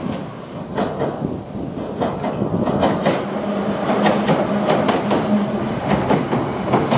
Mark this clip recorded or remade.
recorded